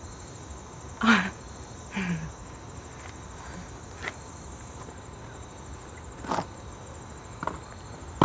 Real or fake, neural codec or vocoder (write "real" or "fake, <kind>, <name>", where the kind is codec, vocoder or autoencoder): real